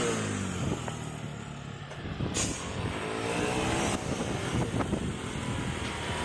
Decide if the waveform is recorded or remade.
recorded